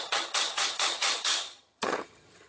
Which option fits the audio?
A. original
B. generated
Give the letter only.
B